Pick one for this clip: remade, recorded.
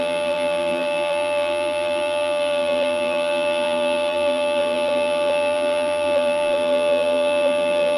remade